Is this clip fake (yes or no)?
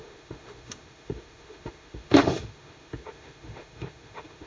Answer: yes